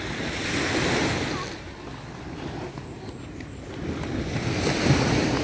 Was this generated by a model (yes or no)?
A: no